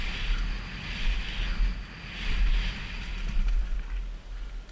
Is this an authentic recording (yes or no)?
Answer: yes